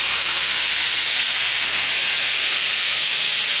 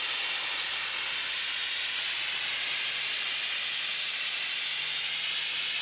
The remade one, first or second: first